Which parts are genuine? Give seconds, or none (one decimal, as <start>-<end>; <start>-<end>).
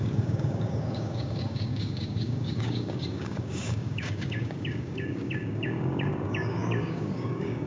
none